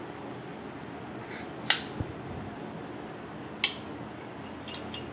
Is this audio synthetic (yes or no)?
no